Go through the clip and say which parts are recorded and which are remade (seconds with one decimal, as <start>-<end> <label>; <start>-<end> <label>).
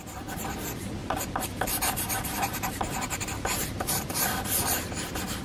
0.0-1.0 recorded; 1.0-4.2 remade; 4.2-5.4 recorded